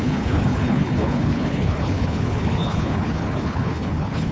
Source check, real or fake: fake